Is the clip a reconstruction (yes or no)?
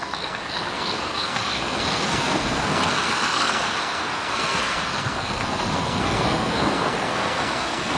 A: yes